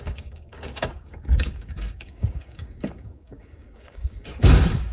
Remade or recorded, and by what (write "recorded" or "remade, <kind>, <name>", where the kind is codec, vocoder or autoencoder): remade, codec, DAC